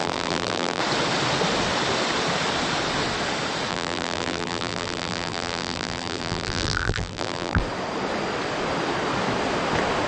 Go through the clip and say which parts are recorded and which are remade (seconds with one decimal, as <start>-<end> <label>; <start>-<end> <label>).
0.0-0.8 remade; 0.8-3.7 recorded; 3.7-7.6 remade; 7.6-10.1 recorded